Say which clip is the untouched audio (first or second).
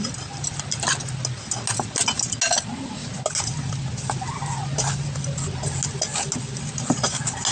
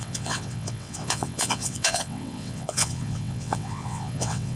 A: first